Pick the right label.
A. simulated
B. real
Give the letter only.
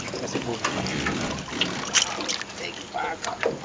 B